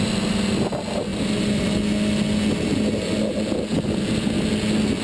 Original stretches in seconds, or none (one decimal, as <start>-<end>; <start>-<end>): 0.0-5.0